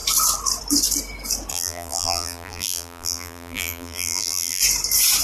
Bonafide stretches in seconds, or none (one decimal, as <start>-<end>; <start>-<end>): 0.0-1.5; 4.6-5.2

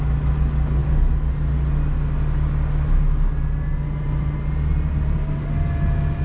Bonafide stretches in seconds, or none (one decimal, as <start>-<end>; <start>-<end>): 0.0-6.2

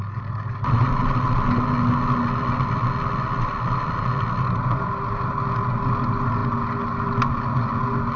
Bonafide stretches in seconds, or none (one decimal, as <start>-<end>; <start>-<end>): 0.0-8.2

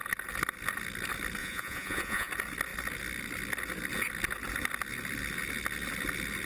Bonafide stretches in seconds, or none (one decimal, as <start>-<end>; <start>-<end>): 0.0-1.4; 2.3-6.5